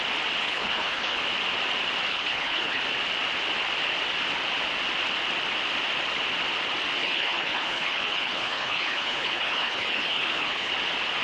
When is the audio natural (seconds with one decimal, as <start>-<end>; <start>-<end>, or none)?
0.0-0.4; 1.2-2.1; 2.8-7.0; 10.7-11.2